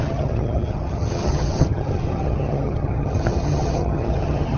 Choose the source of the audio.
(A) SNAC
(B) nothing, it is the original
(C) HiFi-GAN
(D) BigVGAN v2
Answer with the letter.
C